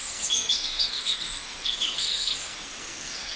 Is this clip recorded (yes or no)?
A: no